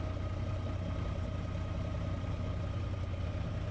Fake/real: real